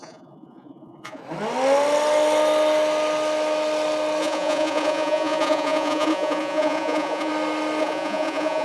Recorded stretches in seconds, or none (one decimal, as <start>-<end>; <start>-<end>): 1.2-4.2; 7.3-7.8